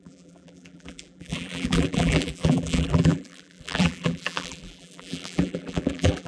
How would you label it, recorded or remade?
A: remade